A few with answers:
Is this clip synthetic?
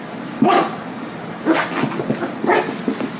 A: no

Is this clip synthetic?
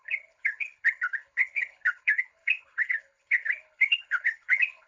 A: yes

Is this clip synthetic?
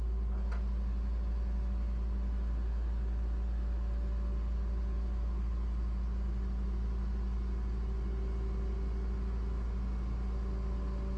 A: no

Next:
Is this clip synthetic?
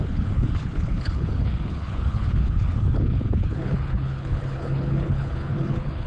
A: yes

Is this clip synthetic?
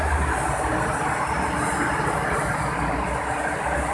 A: no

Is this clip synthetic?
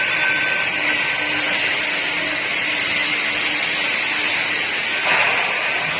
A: no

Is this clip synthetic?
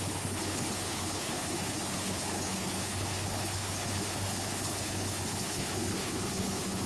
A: yes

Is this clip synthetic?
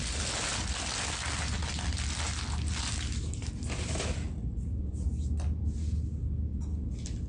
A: no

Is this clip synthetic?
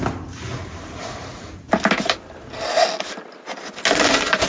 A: no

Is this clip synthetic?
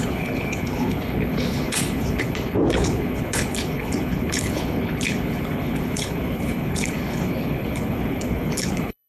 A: yes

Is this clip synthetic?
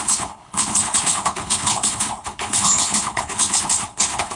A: yes